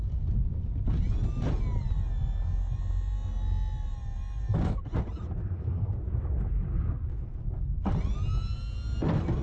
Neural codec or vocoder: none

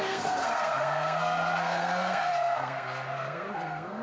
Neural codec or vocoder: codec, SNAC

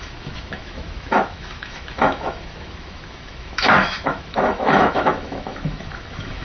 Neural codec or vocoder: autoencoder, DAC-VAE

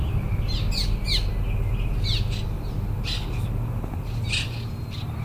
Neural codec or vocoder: none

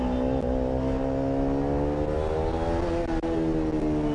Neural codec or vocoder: none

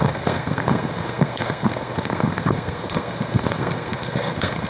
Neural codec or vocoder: codec, SNAC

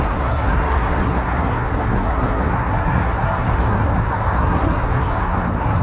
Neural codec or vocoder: codec, SNAC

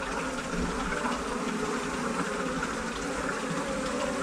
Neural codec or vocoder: none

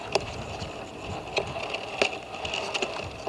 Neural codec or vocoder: none